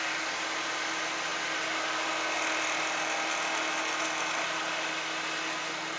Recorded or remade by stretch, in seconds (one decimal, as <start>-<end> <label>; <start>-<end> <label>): 0.0-6.0 recorded